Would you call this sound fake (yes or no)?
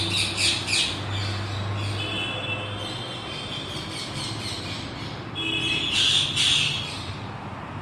no